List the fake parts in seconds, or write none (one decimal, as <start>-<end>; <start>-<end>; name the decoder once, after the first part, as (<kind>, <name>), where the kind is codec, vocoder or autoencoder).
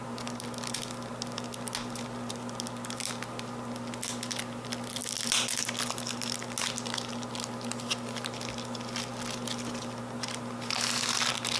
none